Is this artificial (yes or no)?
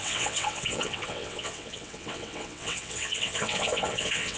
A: yes